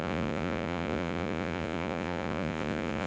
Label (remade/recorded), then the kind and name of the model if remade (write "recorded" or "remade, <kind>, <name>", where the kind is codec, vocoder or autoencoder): remade, vocoder, Vocos